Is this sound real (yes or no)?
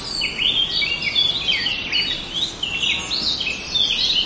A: yes